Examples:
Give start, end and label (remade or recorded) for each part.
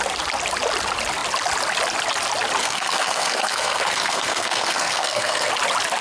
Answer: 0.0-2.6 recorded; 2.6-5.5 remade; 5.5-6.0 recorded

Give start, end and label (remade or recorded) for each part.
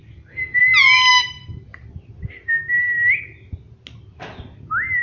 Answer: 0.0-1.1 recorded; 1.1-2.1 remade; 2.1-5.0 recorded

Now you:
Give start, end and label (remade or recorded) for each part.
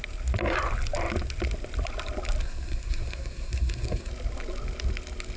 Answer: 0.0-2.4 recorded; 2.4-4.1 remade; 4.1-5.4 recorded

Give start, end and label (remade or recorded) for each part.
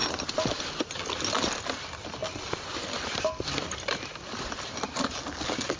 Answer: 0.0-2.2 recorded; 2.2-4.8 remade; 4.8-5.8 recorded